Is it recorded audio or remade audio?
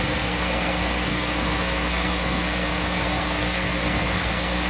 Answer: remade